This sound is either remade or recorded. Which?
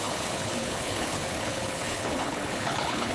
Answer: remade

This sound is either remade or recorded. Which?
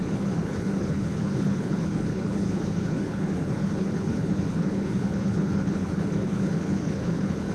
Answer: remade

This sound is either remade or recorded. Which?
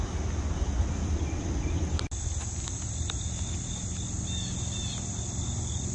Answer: recorded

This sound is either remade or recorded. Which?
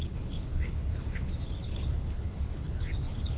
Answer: remade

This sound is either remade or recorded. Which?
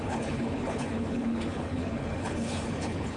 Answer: remade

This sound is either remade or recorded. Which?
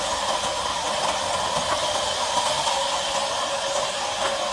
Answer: recorded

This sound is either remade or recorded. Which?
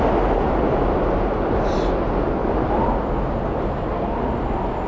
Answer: recorded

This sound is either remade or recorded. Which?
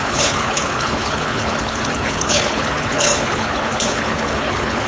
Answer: remade